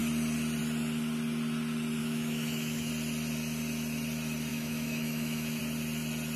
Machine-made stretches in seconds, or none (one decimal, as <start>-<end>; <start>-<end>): 2.0-2.9; 4.5-5.6